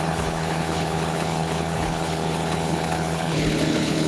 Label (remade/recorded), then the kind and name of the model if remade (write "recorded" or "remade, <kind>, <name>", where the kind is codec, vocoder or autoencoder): remade, codec, HILCodec